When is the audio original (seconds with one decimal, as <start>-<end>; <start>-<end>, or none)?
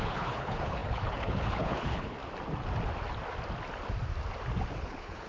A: 2.2-4.8